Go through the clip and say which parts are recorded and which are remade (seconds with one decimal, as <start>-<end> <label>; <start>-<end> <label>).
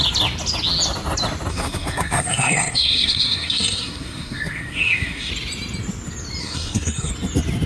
0.0-1.5 recorded; 1.5-5.3 remade; 5.3-6.4 recorded; 6.4-7.1 remade; 7.1-7.7 recorded